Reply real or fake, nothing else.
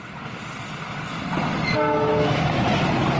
real